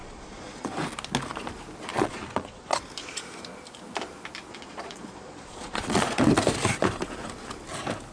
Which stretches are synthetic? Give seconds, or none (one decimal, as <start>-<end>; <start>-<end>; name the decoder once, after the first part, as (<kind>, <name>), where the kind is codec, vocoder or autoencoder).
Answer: 0.0-0.7 (vocoder, Vocos); 1.9-2.8; 4.5-6.2